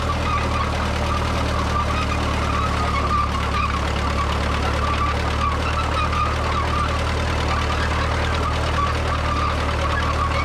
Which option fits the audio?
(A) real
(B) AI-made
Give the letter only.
A